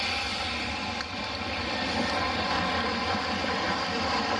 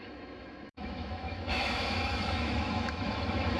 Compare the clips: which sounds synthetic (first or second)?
second